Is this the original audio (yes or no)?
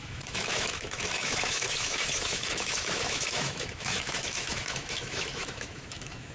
no